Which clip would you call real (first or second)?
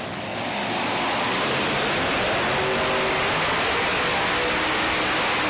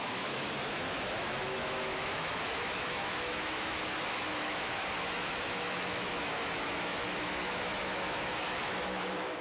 first